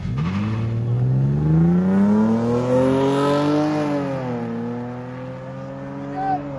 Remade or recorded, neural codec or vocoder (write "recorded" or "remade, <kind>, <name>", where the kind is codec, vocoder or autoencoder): recorded